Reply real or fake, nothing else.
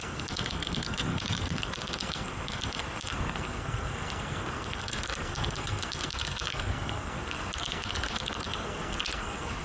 fake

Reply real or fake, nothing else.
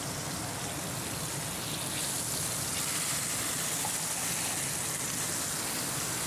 real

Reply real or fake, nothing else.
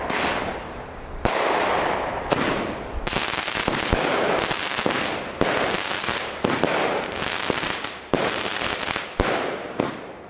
real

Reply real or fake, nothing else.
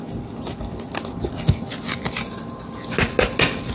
real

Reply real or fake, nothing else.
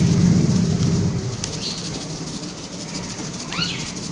real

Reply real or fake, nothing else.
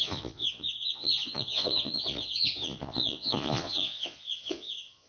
fake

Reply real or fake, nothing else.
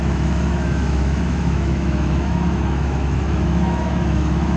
fake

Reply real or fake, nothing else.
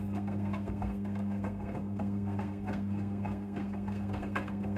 fake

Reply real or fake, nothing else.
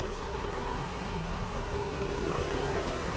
fake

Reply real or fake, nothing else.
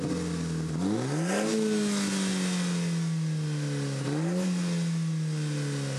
real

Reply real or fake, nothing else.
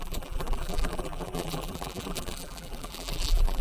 fake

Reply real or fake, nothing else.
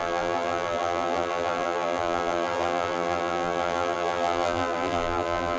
fake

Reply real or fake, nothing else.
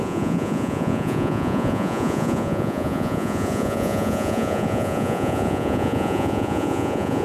fake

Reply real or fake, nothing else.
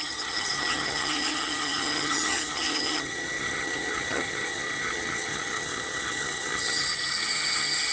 fake